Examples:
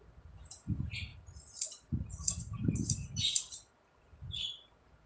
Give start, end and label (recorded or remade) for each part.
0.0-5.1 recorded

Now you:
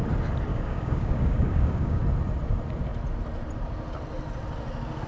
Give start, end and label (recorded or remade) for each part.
0.0-0.5 recorded; 0.5-2.0 remade; 2.0-5.1 recorded